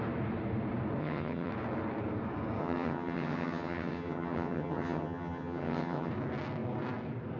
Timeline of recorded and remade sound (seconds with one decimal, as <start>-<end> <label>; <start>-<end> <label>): 0.0-1.0 recorded; 1.0-1.5 remade; 1.5-2.6 recorded; 2.6-6.1 remade; 6.1-7.4 recorded